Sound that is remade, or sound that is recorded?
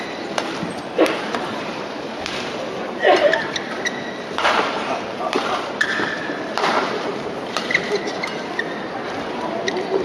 remade